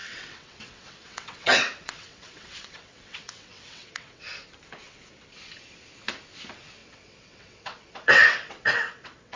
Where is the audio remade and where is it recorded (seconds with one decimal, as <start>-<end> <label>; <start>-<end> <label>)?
0.0-4.2 remade; 4.2-6.8 recorded; 6.8-9.4 remade

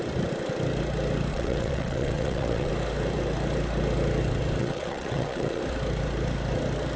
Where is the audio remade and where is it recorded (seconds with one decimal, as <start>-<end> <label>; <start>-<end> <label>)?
0.0-1.3 recorded; 1.3-2.7 remade; 2.7-4.6 recorded; 4.6-5.6 remade; 5.6-7.0 recorded